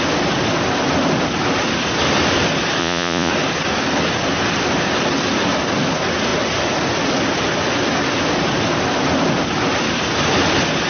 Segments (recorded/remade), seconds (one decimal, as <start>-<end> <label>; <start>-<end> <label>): 0.0-2.8 recorded; 2.8-3.3 remade; 3.3-10.9 recorded